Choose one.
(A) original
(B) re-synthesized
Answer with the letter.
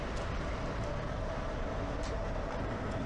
A